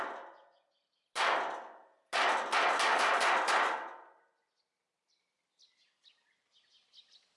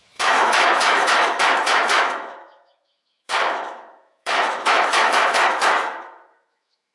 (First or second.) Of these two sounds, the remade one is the second